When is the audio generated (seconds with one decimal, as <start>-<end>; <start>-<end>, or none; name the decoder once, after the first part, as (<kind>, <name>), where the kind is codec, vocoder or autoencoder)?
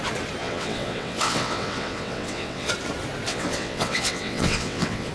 0.4-2.7 (vocoder, WaveNeXt); 3.3-5.1